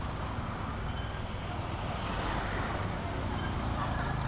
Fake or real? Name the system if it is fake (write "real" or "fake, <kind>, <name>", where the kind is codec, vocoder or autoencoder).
real